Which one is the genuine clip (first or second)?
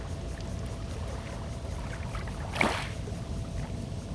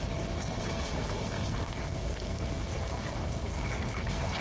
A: first